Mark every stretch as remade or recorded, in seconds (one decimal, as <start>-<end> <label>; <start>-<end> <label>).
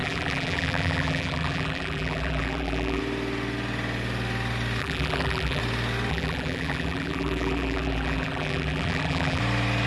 0.0-3.0 remade; 3.0-4.8 recorded; 4.8-5.6 remade; 5.6-6.1 recorded; 6.1-9.4 remade; 9.4-9.9 recorded